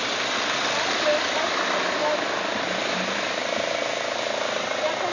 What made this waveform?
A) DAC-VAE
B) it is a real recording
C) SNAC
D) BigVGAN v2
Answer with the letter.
B